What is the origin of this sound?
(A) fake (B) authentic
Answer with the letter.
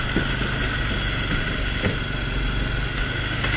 B